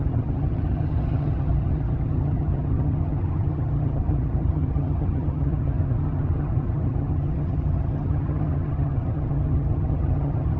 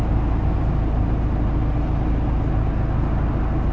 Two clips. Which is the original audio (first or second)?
second